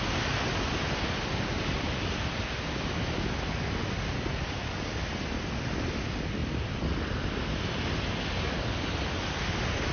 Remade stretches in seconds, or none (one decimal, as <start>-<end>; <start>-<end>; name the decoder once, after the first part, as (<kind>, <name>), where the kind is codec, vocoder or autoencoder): none